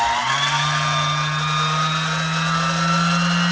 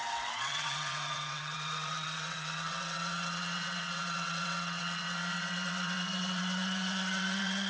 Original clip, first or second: first